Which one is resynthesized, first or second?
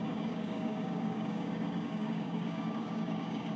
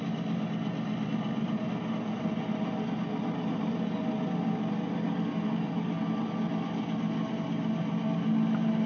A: first